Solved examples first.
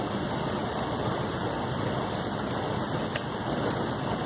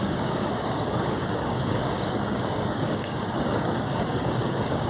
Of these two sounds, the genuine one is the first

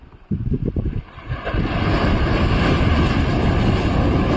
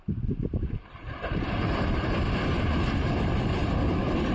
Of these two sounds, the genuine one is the first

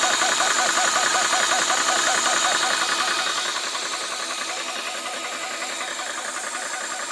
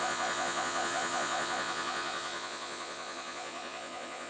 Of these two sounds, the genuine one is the first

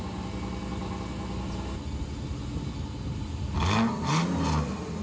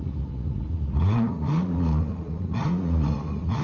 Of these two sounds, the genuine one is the first